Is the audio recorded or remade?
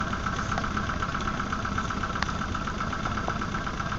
recorded